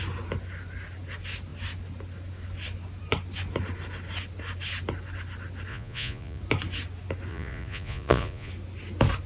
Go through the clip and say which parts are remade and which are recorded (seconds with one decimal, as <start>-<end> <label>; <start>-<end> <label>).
0.0-5.7 recorded; 5.7-6.4 remade; 6.4-7.3 recorded; 7.3-8.5 remade; 8.5-9.3 recorded